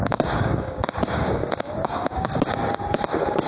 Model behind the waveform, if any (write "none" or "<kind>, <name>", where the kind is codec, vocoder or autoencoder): codec, DAC